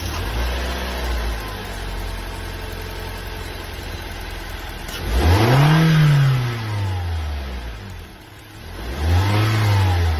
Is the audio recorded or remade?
recorded